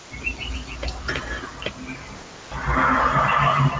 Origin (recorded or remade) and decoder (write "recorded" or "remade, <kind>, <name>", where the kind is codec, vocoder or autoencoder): recorded